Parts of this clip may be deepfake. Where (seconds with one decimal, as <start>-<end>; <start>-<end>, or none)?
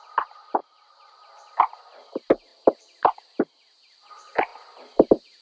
none